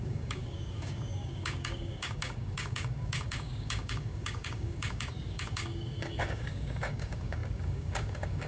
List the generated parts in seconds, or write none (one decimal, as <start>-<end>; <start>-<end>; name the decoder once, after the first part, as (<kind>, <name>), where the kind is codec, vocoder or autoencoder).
0.0-8.5 (codec, DAC)

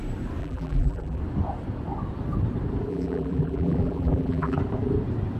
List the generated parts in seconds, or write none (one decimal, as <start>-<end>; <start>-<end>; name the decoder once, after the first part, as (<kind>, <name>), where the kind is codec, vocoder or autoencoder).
0.4-1.2 (vocoder, BigVGAN v2); 2.9-4.6

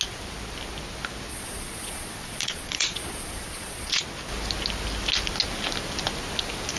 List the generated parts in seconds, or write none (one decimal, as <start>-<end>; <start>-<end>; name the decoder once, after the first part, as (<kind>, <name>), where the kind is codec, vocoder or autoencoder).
1.3-4.0 (vocoder, Vocos)

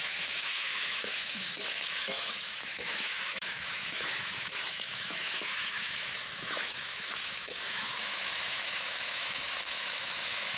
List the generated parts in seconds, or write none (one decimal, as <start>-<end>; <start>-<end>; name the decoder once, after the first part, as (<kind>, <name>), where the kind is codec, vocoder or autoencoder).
0.0-10.6 (autoencoder, DAC-VAE)

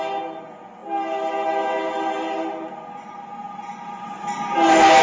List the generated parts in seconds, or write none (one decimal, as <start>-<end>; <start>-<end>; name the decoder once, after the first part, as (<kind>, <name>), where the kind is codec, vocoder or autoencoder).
none

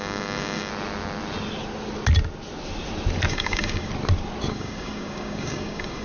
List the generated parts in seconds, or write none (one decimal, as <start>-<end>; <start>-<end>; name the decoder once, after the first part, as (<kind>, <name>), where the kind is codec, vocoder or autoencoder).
0.0-0.7 (codec, DAC); 3.3-3.9; 4.5-6.0

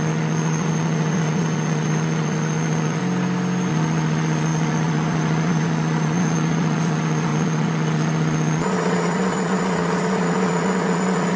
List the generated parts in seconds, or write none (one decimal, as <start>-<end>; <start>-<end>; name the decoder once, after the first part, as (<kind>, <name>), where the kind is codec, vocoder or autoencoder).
0.0-3.0 (vocoder, Vocos); 3.7-11.4